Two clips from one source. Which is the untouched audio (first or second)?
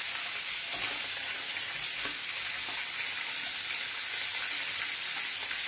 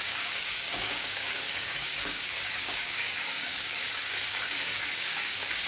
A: first